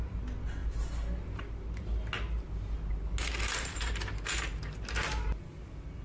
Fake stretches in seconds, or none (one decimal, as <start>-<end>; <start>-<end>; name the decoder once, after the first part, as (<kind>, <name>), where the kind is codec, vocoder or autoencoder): none